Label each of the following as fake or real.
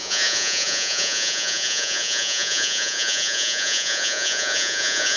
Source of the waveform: fake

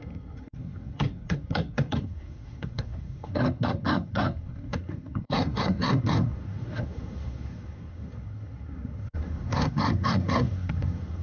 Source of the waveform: fake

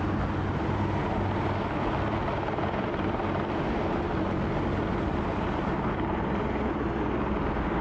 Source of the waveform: real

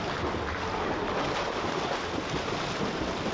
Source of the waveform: real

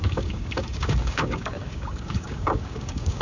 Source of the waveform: fake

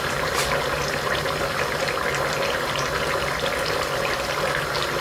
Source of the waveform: real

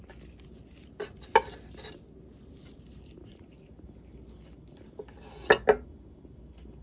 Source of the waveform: real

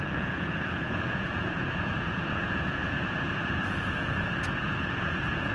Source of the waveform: fake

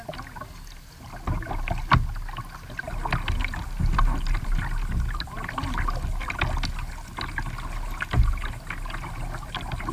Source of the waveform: real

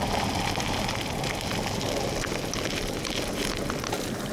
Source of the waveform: real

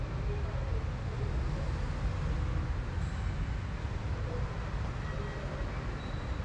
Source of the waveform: real